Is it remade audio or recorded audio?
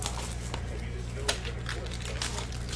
recorded